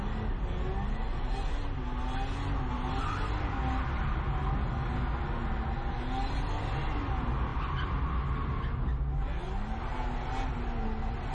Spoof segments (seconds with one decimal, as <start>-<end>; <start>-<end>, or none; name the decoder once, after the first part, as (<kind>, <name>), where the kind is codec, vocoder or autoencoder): none